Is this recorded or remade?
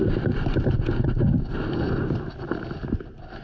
recorded